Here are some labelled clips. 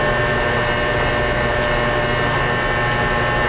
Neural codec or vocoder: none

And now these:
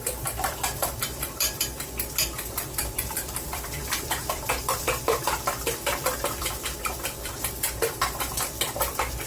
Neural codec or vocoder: vocoder, BigVGAN v2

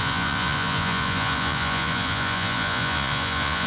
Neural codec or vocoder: vocoder, Vocos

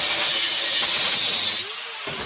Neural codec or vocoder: none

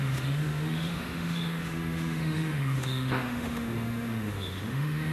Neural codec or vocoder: autoencoder, DAC-VAE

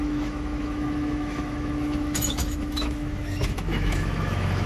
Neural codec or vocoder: autoencoder, DAC-VAE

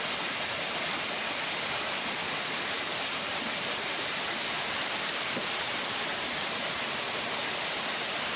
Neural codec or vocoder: vocoder, BigVGAN v2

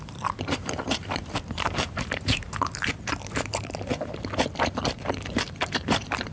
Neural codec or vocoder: vocoder, BigVGAN v2